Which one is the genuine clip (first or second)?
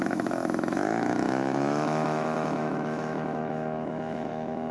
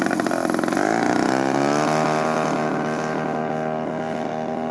second